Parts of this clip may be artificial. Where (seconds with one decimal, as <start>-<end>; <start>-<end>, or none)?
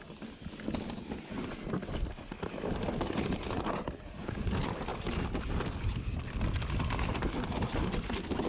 none